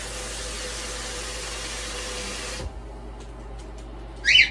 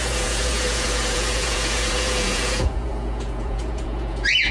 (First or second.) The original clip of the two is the first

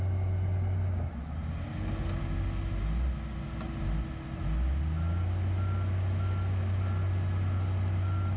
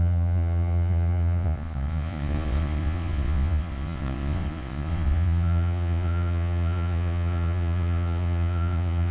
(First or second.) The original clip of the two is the first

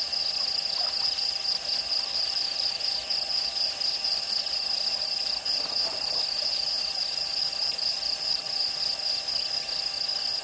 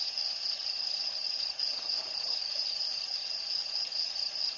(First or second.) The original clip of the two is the first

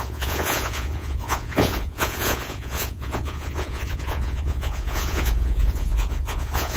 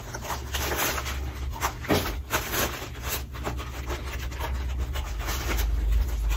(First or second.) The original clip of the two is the second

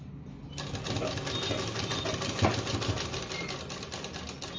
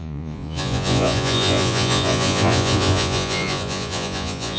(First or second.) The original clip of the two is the first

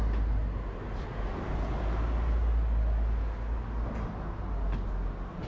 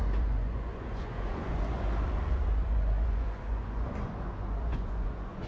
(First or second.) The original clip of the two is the first